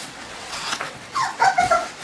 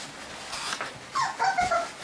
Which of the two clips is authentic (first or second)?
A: second